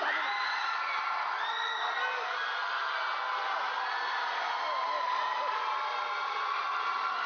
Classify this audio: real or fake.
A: real